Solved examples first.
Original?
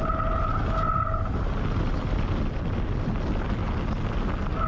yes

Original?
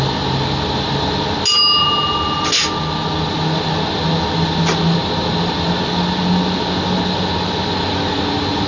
yes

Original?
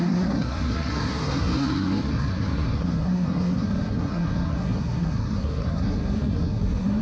no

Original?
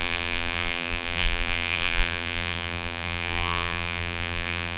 no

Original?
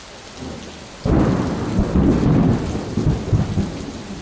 yes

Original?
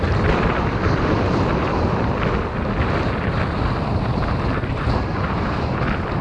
yes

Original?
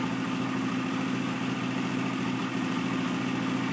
yes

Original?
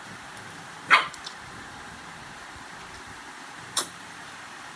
no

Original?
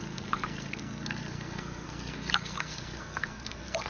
no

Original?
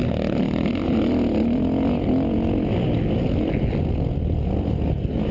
yes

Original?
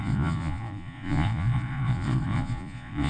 no